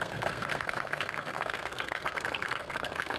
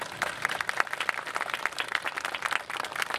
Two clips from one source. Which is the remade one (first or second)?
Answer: first